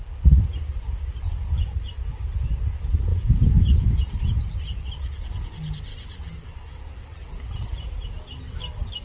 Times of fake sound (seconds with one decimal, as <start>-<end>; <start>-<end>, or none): 3.1-3.9